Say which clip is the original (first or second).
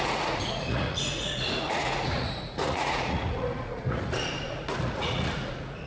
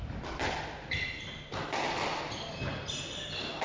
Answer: second